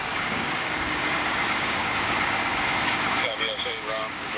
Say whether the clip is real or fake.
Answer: fake